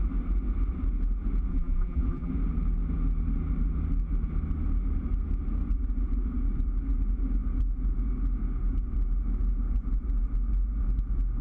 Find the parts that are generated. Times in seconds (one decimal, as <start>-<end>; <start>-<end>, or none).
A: 1.5-2.3